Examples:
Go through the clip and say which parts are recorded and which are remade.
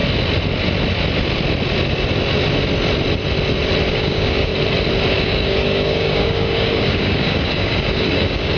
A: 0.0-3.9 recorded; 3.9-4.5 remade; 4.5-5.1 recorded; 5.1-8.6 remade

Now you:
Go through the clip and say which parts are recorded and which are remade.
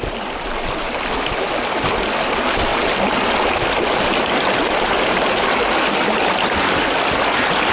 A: 0.0-7.7 recorded